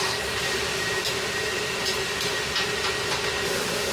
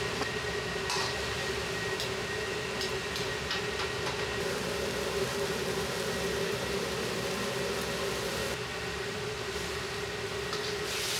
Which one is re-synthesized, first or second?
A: first